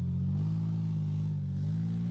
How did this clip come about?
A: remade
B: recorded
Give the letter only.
B